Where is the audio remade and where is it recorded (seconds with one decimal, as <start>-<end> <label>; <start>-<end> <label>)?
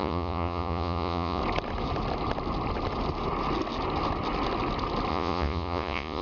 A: 0.0-1.4 remade; 1.4-5.1 recorded; 5.1-6.2 remade